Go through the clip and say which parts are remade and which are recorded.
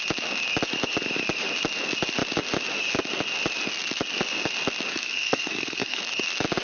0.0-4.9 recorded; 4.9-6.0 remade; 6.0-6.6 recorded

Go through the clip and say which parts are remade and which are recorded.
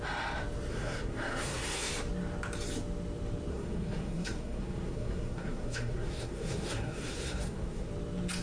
0.0-0.7 recorded; 0.7-1.9 remade; 1.9-3.5 recorded; 3.5-7.9 remade; 7.9-8.4 recorded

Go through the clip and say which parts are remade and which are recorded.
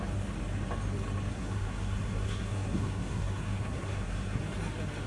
0.0-1.3 recorded; 1.3-4.4 remade; 4.4-5.1 recorded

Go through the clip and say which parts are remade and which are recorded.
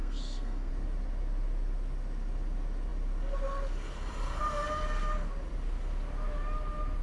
0.0-0.7 remade; 0.7-7.0 recorded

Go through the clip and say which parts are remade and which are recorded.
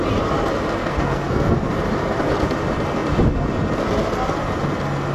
0.0-0.8 recorded; 0.8-1.7 remade; 1.7-5.1 recorded